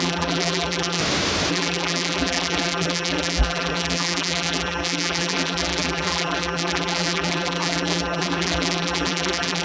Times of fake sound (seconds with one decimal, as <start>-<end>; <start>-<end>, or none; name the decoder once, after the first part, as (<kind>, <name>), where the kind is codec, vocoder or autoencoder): 0.0-1.0 (vocoder, BigVGAN v2); 1.5-9.6

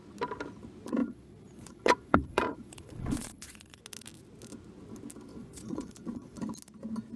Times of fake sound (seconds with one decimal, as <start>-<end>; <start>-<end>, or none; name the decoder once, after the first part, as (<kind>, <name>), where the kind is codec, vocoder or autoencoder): 1.0-3.8 (vocoder, Vocos); 5.3-6.4

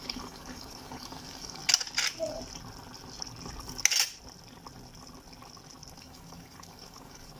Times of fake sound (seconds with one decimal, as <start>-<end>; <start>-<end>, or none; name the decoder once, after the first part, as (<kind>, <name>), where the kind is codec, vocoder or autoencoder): 0.0-1.6 (codec, DAC); 6.0-7.4

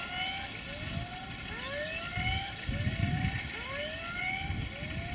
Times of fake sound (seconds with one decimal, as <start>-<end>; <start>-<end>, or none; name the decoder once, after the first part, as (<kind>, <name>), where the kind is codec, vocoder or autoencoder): 1.1-4.2 (vocoder, BigVGAN v2)

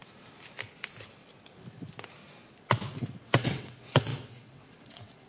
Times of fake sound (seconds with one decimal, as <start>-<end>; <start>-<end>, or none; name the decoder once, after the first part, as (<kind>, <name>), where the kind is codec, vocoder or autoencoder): 3.2-5.3 (vocoder, WaveNeXt)

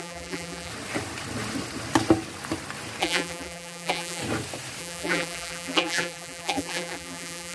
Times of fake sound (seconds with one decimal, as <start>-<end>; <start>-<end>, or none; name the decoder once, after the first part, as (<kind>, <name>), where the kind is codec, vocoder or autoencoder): 0.0-0.7 (vocoder, BigVGAN v2); 3.0-4.2; 4.8-7.5

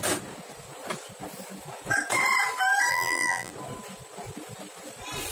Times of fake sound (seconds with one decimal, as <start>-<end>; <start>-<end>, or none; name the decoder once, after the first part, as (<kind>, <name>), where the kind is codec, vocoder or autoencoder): 2.9-3.5 (vocoder, BigVGAN v2)

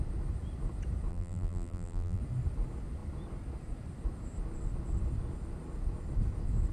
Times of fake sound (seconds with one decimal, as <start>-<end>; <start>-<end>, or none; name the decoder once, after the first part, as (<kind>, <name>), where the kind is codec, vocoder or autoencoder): 1.1-2.2 (vocoder, BigVGAN v2)